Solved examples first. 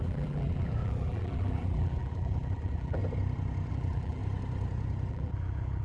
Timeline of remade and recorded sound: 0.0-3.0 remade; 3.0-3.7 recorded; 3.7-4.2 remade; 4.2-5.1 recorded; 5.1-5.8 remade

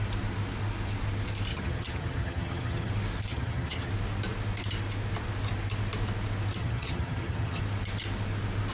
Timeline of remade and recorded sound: 0.0-1.5 recorded; 1.5-2.9 remade; 2.9-3.3 recorded; 3.3-3.9 remade; 3.9-6.6 recorded; 6.6-7.6 remade; 7.6-8.7 recorded

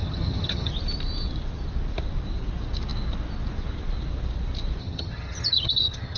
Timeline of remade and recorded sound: 0.0-0.7 remade; 0.7-4.8 recorded; 4.8-6.2 remade

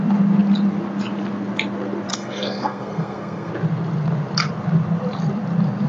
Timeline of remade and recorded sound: 0.0-2.1 recorded; 2.1-3.5 remade; 3.5-5.9 recorded